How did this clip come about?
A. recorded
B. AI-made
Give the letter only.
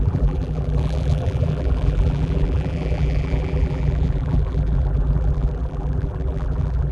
B